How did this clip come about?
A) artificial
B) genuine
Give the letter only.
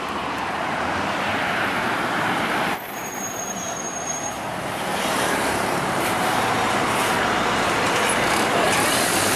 A